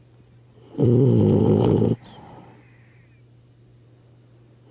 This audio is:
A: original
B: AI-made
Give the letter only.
A